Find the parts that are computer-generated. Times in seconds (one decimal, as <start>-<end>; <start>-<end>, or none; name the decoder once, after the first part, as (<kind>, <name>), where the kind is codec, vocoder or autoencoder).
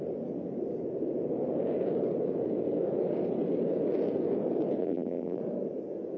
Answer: 4.8-5.4 (vocoder, BigVGAN v2)